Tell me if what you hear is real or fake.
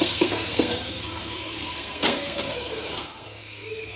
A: fake